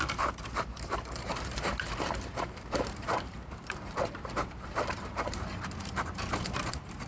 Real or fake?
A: fake